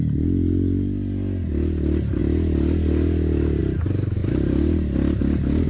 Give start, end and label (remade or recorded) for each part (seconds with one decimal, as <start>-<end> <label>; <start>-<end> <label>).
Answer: 0.0-5.7 recorded